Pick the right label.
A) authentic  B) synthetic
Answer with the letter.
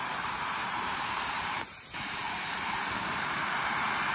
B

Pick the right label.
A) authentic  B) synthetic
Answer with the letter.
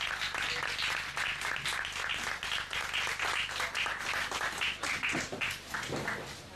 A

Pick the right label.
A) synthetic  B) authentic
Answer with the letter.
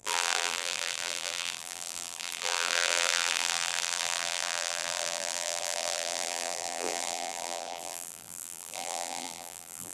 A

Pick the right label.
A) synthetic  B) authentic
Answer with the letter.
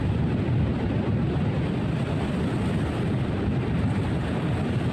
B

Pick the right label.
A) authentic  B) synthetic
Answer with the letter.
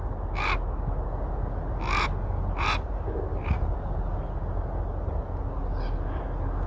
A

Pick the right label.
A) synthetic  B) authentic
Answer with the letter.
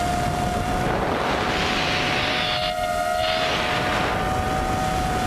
B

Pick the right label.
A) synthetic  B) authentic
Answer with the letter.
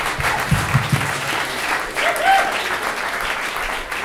B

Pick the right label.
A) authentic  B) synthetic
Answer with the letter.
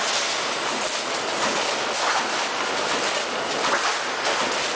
A